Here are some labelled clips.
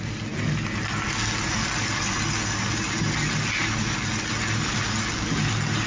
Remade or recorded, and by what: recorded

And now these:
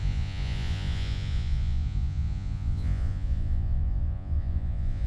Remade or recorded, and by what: remade, vocoder, Vocos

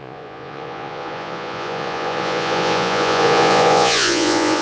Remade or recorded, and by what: remade, vocoder, Vocos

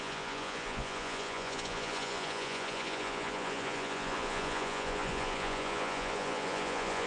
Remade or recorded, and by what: remade, vocoder, Vocos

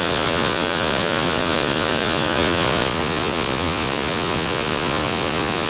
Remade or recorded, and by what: remade, vocoder, Vocos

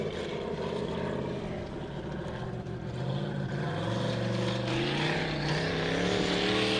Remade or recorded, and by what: recorded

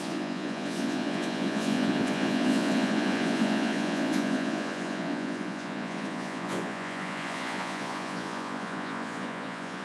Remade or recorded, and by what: remade, vocoder, Vocos